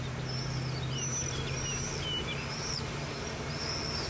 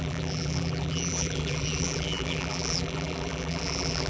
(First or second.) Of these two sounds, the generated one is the second